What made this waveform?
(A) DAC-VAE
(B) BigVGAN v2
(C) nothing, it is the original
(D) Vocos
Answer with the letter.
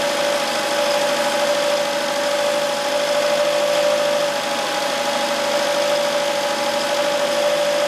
C